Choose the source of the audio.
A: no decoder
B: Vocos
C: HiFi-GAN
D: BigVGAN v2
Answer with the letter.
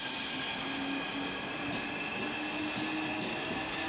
A